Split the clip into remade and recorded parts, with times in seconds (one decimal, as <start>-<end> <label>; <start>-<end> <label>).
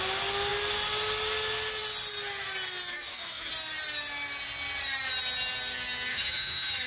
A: 0.0-2.9 recorded; 2.9-3.5 remade; 3.5-6.1 recorded; 6.1-6.9 remade